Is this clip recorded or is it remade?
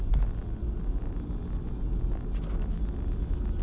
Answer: recorded